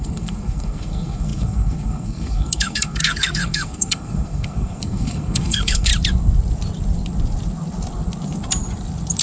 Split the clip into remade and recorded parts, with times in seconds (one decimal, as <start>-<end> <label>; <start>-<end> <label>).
0.0-5.9 remade; 5.9-9.2 recorded